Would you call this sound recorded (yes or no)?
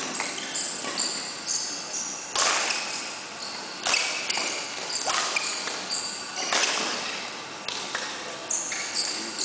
yes